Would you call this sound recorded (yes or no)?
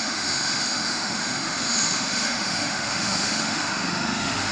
no